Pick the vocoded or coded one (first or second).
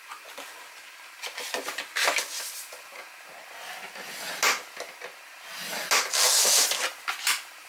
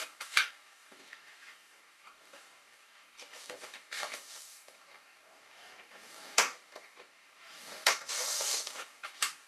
second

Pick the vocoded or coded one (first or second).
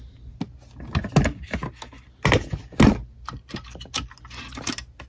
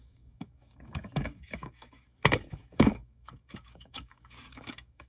second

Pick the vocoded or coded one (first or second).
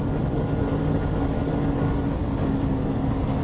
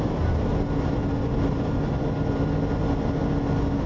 first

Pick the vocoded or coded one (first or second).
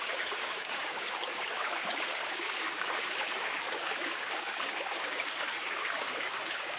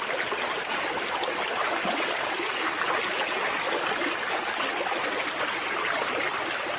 first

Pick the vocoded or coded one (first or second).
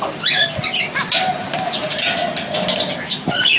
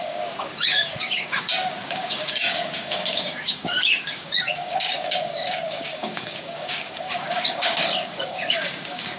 second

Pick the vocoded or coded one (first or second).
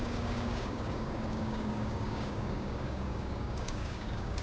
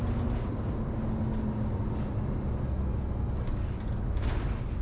first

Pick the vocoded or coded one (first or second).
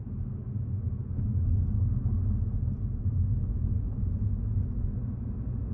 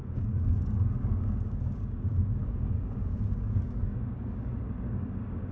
second